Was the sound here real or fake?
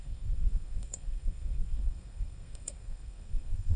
fake